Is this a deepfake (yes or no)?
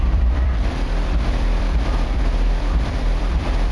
yes